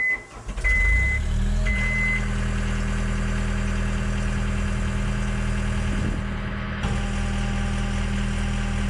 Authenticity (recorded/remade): recorded